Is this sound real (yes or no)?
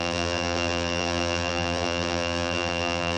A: no